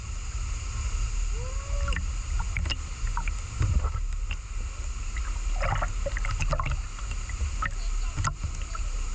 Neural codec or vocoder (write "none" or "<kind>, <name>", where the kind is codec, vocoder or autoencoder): none